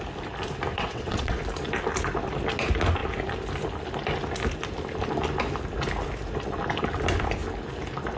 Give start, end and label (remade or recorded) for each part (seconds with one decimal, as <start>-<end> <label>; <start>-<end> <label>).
0.0-0.7 recorded; 0.7-1.4 remade; 1.4-8.2 recorded